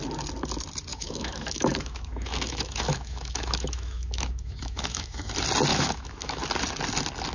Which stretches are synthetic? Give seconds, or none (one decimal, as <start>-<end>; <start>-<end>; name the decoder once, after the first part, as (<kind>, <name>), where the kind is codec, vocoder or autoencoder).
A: 0.9-5.3 (autoencoder, DAC-VAE); 5.7-6.4